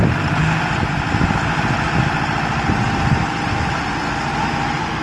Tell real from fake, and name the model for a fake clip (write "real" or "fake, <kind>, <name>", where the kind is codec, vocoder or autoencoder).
real